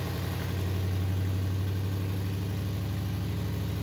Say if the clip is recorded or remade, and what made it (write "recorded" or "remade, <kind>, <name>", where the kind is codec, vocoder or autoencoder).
recorded